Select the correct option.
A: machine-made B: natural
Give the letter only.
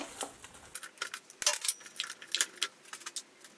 B